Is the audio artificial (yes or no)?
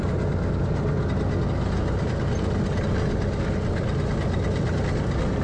no